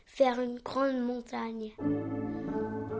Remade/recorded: recorded